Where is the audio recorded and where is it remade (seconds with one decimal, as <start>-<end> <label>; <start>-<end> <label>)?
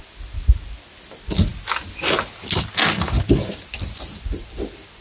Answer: 0.0-5.0 recorded